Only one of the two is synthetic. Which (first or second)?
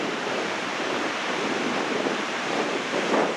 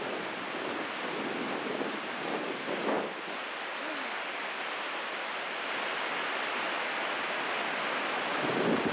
first